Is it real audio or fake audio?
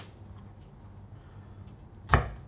real